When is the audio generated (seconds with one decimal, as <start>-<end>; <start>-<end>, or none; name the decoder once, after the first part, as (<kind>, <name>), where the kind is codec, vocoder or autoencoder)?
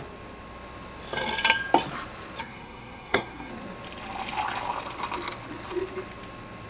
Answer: 2.4-3.5 (codec, SNAC)